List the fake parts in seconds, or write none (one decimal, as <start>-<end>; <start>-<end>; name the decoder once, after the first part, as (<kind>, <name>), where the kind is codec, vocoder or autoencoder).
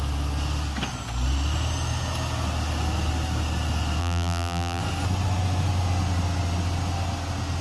4.0-4.8 (vocoder, BigVGAN v2)